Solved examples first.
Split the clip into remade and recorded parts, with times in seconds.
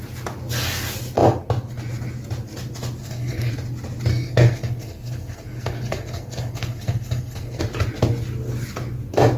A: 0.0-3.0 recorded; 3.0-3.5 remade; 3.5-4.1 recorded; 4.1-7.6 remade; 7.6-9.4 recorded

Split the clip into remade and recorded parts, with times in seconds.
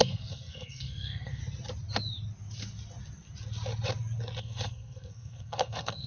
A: 0.0-1.4 remade; 1.4-4.4 recorded; 4.4-6.1 remade